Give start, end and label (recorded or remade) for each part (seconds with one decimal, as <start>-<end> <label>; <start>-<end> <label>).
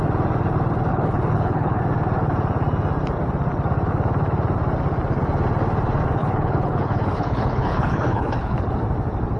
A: 0.0-0.9 recorded; 0.9-1.8 remade; 1.8-6.2 recorded; 6.2-8.7 remade; 8.7-9.4 recorded